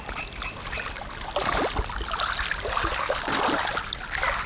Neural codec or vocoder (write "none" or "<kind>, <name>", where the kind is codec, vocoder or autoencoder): none